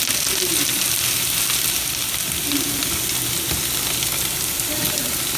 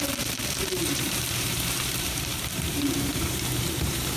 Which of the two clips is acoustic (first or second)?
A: first